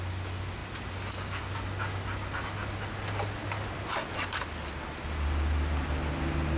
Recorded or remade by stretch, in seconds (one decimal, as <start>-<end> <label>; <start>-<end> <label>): 0.0-6.6 recorded